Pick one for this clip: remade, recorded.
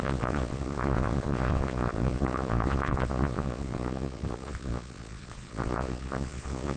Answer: remade